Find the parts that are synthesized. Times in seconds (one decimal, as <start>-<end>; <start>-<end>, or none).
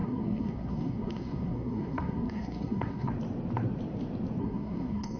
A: 0.0-3.1; 4.4-5.2